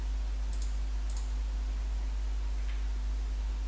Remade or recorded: recorded